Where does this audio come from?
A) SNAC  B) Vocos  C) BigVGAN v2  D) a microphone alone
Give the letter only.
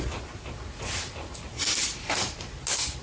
D